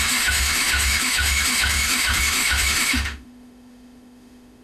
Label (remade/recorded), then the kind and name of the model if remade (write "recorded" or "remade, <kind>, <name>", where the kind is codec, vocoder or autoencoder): remade, autoencoder, DAC-VAE